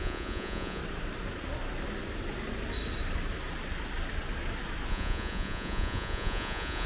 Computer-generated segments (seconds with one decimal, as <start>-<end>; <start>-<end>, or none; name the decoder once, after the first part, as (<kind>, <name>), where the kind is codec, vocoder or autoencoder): 0.0-0.8 (vocoder, Vocos); 4.9-6.9

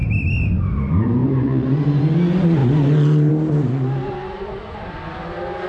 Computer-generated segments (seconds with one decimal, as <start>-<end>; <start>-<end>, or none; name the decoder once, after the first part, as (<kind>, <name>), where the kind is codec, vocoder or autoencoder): 1.2-2.0 (vocoder, Vocos)

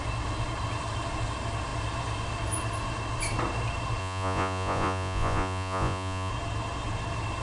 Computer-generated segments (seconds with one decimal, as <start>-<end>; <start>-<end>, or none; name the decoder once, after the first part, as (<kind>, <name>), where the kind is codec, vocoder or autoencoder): 4.0-6.3 (vocoder, Vocos)

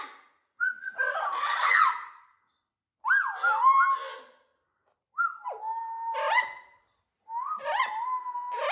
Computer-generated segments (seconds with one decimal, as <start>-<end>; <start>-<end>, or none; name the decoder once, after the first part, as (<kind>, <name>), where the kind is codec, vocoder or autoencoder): 0.4-2.5 (vocoder, Vocos)

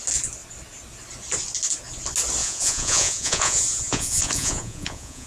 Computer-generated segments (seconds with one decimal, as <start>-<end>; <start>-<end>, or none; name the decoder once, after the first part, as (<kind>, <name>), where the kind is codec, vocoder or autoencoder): 2.4-5.3 (vocoder, Vocos)